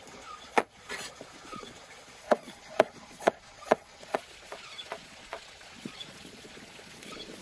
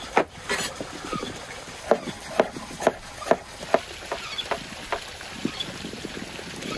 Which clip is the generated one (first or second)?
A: first